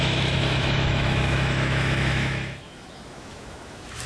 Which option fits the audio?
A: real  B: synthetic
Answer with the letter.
B